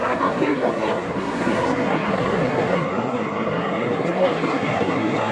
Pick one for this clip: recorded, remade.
remade